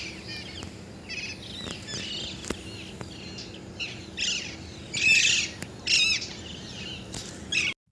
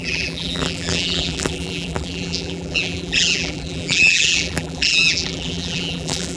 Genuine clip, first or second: first